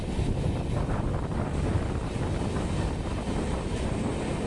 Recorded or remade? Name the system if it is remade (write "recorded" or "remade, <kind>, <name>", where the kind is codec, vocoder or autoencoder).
recorded